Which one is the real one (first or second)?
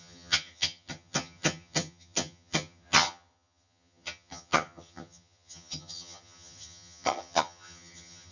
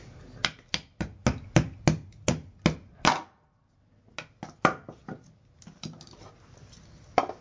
second